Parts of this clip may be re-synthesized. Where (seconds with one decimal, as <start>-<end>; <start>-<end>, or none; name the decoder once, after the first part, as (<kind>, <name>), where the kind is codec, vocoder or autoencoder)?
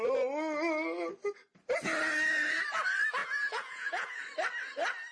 3.2-4.2 (vocoder, Vocos)